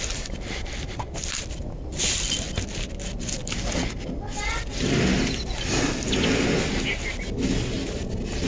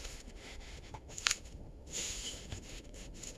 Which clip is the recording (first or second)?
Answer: first